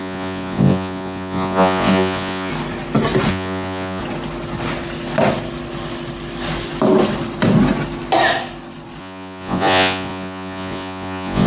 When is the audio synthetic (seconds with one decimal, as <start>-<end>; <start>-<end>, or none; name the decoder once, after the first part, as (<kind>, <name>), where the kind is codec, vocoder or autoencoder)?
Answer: 0.0-2.5 (vocoder, Vocos); 3.3-4.0; 9.0-11.5